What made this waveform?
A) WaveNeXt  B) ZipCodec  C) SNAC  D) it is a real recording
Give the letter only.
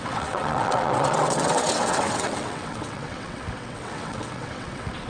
A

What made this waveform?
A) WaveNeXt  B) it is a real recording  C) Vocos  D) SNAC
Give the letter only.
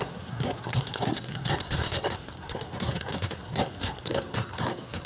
D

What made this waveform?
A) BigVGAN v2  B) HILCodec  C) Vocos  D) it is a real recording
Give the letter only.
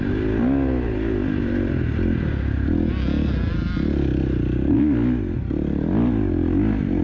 D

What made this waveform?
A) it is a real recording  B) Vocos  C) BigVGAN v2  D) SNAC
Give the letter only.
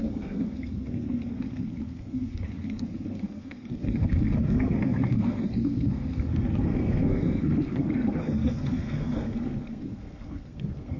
D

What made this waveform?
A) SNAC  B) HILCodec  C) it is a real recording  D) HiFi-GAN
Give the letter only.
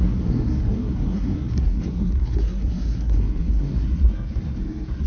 A